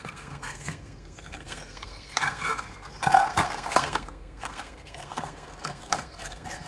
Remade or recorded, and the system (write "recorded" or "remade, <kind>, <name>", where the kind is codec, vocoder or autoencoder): remade, codec, SNAC